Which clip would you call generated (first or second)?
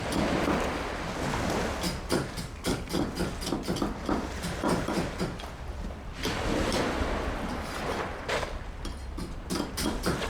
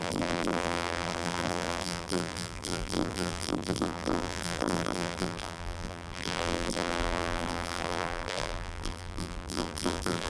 second